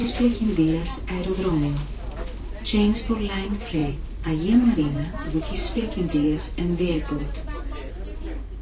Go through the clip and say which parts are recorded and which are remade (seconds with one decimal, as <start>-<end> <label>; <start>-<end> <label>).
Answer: 0.0-1.5 remade; 1.5-3.8 recorded; 3.8-7.9 remade; 7.9-8.6 recorded